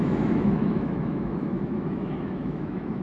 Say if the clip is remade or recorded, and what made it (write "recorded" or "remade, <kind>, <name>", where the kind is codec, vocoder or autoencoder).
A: remade, autoencoder, DAC-VAE